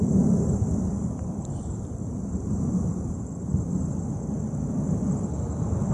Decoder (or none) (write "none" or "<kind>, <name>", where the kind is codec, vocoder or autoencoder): none